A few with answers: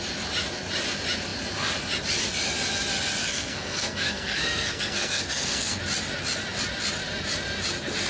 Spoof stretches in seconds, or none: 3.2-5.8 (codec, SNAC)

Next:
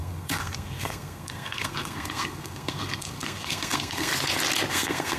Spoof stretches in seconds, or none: 0.0-4.1 (codec, SNAC); 4.7-5.2

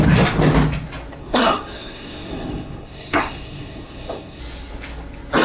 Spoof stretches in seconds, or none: 1.2-4.4 (codec, SNAC)

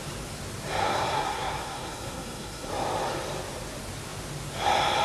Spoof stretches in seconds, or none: 0.8-2.7 (codec, SNAC)